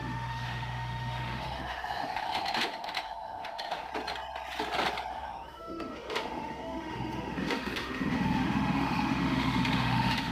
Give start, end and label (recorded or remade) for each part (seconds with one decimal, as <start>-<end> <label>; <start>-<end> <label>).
0.0-3.9 remade; 3.9-5.1 recorded; 5.1-10.3 remade